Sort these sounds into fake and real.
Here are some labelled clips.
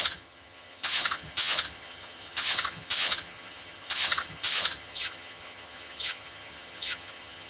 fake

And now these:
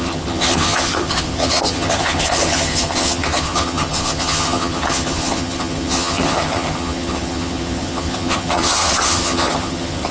fake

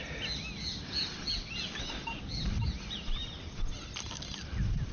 real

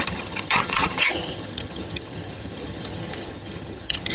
fake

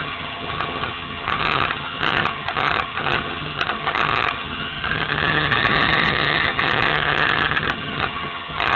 fake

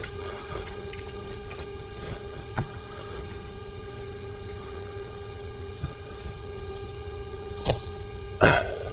fake